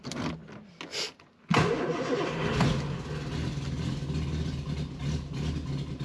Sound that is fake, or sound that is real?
real